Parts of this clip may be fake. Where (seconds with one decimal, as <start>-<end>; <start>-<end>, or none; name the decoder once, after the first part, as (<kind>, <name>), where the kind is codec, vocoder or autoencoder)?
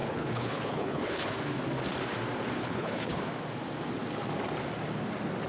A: 0.0-1.4 (codec, HILCodec); 2.6-3.2